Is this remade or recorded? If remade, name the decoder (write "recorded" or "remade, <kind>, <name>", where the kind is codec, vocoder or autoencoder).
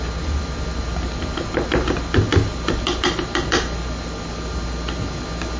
recorded